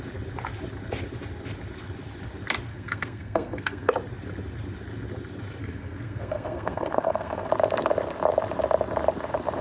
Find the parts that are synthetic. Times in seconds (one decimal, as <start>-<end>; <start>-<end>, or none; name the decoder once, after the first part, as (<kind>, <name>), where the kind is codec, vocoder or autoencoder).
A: 2.7-3.9 (codec, SNAC); 5.6-7.5